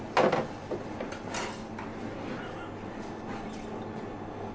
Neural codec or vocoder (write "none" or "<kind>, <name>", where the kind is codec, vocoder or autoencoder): none